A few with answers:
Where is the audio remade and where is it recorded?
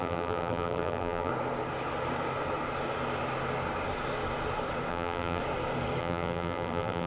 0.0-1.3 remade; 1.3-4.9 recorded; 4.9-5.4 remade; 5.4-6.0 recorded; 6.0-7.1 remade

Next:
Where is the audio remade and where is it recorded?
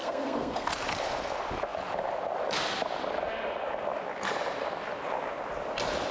0.0-0.7 remade; 0.7-6.1 recorded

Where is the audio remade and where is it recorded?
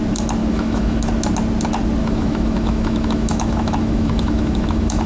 0.0-0.4 recorded; 0.4-1.1 remade; 1.1-2.0 recorded; 2.0-5.1 remade